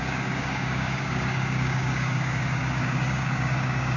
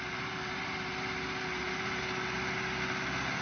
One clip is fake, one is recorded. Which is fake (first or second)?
first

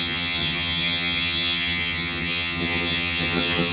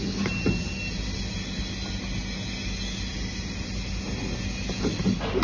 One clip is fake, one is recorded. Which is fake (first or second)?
first